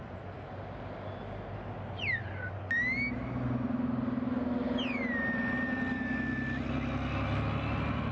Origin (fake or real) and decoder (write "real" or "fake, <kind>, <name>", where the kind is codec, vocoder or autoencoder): real